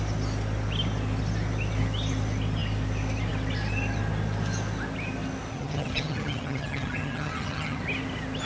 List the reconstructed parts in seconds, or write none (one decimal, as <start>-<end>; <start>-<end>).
5.5-7.8